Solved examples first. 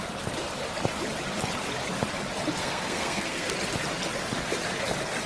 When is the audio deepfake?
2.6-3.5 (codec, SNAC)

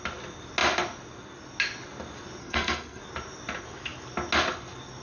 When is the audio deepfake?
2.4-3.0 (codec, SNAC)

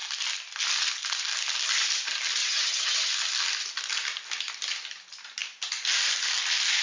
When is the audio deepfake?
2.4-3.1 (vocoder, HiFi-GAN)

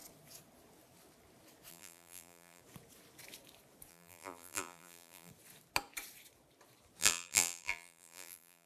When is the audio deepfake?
1.7-2.6 (vocoder, BigVGAN v2); 3.9-5.3; 7.0-8.7

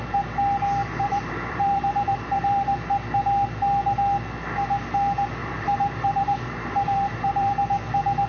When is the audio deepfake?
0.8-2.9 (vocoder, BigVGAN v2); 5.4-7.5

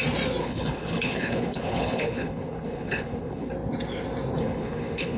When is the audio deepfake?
0.4-3.5 (codec, HILCodec); 4.4-5.2

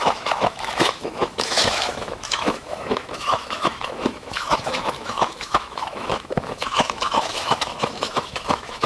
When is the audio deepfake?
0.0-8.9 (autoencoder, DAC-VAE)

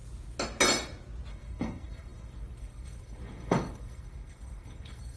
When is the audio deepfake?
1.3-5.2 (codec, SNAC)